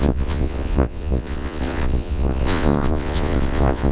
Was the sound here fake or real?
fake